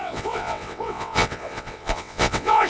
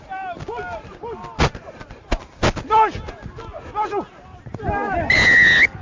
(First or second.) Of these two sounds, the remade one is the first